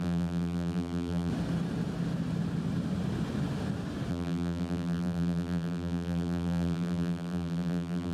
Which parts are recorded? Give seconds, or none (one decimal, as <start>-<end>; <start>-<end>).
1.3-4.1